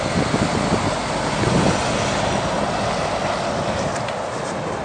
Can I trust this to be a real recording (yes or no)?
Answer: yes